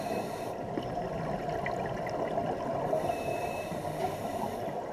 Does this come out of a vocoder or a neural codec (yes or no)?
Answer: no